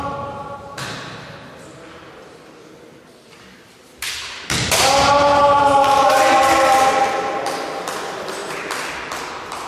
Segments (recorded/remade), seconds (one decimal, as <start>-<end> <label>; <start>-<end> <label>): 0.0-9.7 recorded